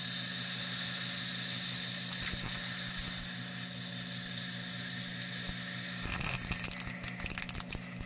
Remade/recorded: recorded